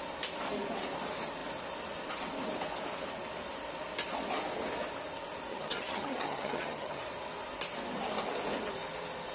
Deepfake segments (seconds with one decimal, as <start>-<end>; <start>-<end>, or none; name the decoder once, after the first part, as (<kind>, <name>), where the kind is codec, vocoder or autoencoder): 5.5-7.0 (vocoder, HiFi-GAN)